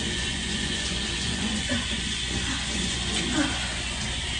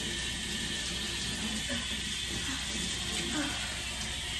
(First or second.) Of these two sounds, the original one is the second